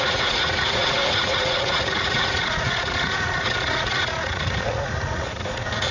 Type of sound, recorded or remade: remade